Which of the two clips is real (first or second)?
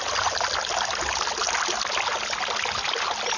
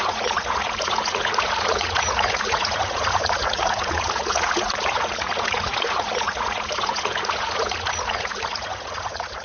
first